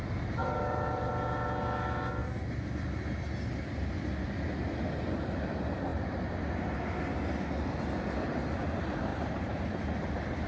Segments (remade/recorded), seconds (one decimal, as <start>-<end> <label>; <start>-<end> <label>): 0.0-0.4 recorded; 0.4-1.0 remade; 1.0-9.1 recorded; 9.1-9.6 remade; 9.6-10.5 recorded